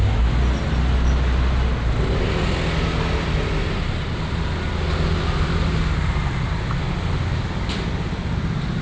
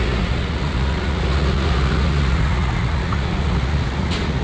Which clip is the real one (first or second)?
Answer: first